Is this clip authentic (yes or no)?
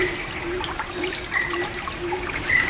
no